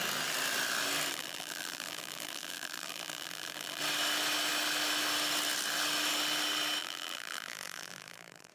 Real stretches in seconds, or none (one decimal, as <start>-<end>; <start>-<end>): 0.0-1.1; 3.8-6.8